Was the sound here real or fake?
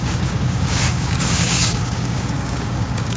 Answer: fake